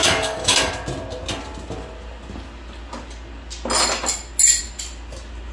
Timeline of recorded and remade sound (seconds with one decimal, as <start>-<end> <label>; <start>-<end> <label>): 0.0-0.7 remade; 0.7-5.5 recorded